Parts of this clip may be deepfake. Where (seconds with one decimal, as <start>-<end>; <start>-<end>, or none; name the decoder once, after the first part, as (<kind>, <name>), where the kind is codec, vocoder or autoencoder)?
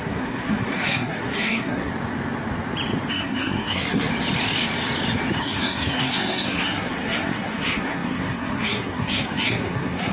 0.0-1.9 (codec, SNAC); 3.1-4.1; 5.4-10.1